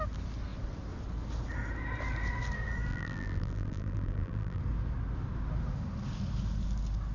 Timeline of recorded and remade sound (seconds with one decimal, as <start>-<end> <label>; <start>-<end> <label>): 0.0-2.9 recorded; 2.9-4.6 remade; 4.6-7.1 recorded

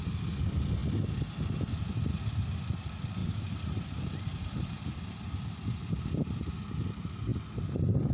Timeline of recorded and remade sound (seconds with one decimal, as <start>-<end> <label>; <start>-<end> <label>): 0.0-3.2 recorded; 3.2-4.8 remade; 4.8-8.1 recorded

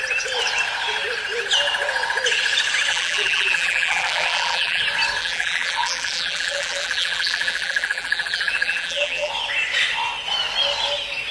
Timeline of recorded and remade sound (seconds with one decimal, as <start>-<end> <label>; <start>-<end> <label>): 0.0-2.9 recorded; 2.9-4.8 remade; 4.8-5.2 recorded; 5.2-9.3 remade; 9.3-11.3 recorded

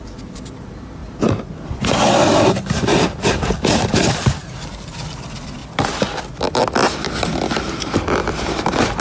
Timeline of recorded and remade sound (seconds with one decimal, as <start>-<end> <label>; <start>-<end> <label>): 0.0-1.0 remade; 1.0-3.5 recorded; 3.5-9.0 remade

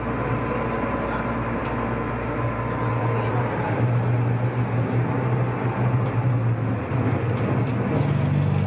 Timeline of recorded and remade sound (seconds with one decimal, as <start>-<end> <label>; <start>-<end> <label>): 0.0-8.7 recorded